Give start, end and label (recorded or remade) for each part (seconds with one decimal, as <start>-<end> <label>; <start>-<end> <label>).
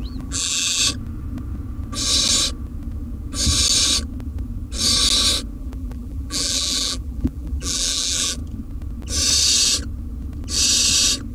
0.0-0.8 remade; 0.8-5.6 recorded; 5.6-8.4 remade; 8.4-11.3 recorded